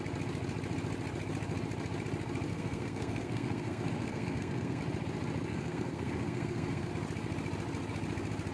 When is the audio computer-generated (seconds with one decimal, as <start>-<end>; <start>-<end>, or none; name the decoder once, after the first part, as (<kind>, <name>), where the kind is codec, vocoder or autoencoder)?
2.5-4.8 (codec, SNAC); 5.5-6.9